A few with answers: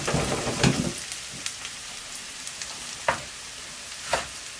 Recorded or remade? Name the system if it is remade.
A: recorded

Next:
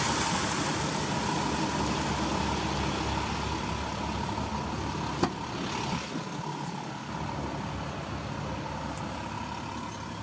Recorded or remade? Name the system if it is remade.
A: recorded